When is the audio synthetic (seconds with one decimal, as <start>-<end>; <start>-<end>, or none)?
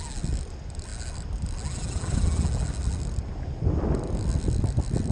none